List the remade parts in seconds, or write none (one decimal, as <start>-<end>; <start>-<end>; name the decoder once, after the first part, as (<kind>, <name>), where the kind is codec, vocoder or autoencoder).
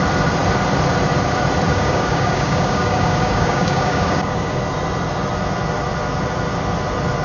1.7-4.6 (codec, DAC)